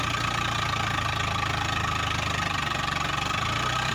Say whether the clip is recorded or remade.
recorded